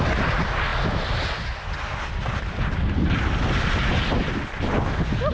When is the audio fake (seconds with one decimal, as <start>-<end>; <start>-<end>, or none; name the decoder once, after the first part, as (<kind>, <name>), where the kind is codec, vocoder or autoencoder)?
none